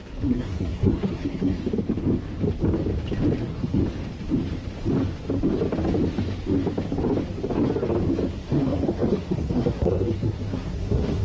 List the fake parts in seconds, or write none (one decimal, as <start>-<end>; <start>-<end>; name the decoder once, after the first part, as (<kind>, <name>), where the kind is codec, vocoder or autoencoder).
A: 0.0-1.6 (codec, SNAC); 3.4-3.8; 8.3-11.2